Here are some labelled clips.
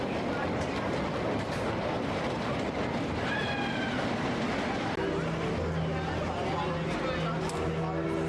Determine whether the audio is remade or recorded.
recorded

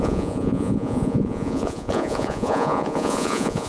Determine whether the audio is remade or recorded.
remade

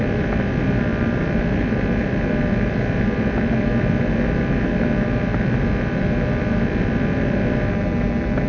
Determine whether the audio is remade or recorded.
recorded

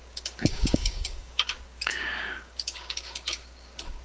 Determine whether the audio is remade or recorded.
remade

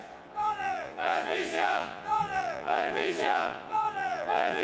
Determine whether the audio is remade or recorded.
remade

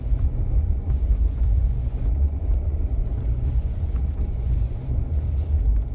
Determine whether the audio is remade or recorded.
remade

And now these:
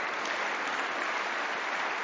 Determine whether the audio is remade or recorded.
recorded